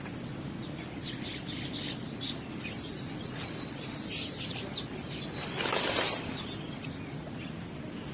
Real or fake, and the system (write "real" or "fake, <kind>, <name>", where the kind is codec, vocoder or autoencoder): real